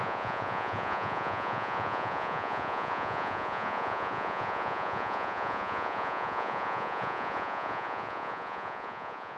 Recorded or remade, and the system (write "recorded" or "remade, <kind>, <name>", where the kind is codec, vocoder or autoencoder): remade, vocoder, Vocos